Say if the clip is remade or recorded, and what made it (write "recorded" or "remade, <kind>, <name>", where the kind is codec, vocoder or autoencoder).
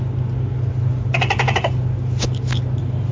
recorded